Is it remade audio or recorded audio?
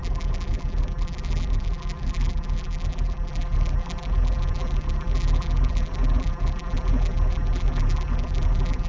remade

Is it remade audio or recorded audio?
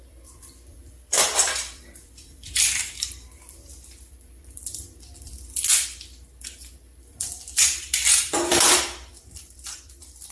remade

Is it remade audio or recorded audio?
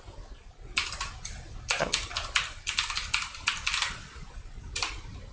recorded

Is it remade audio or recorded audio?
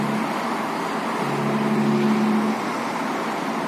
recorded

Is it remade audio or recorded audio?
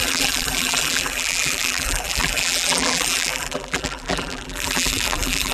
remade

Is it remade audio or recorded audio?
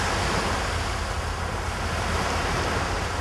recorded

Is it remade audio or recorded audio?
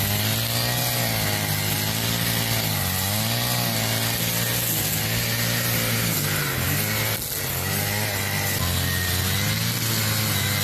recorded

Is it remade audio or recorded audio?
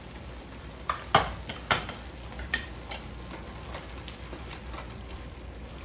recorded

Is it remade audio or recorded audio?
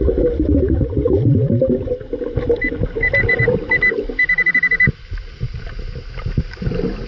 recorded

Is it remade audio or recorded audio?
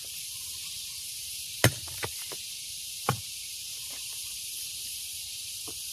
remade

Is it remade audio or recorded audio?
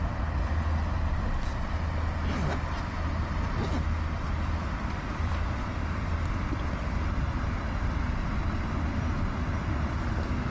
recorded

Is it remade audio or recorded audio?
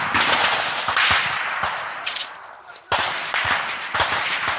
recorded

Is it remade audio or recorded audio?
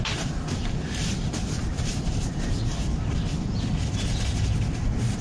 recorded